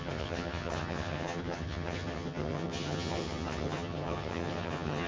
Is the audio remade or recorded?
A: remade